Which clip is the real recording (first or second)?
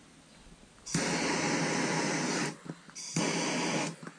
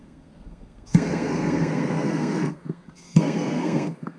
first